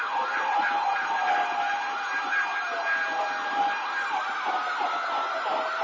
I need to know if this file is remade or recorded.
recorded